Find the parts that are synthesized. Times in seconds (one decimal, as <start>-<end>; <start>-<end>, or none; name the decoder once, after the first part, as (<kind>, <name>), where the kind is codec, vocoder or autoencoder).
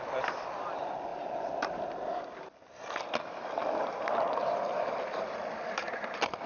none